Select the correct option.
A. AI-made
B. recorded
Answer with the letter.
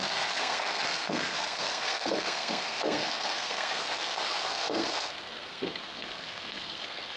A